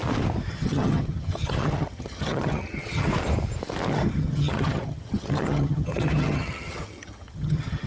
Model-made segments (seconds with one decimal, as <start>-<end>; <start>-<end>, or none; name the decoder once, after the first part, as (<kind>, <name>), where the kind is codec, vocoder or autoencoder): 0.5-3.1 (vocoder, HiFi-GAN); 3.9-7.9